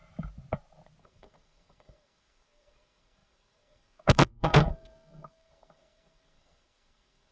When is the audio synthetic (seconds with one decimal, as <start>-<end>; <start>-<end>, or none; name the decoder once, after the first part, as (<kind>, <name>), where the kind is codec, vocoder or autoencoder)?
1.0-7.3 (codec, SNAC)